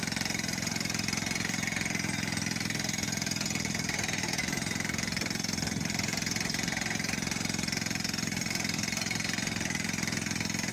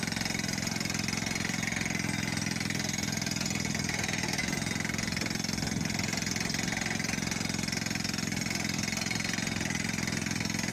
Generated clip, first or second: first